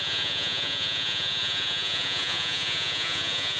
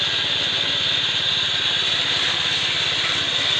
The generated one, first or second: first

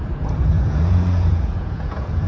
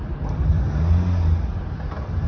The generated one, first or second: first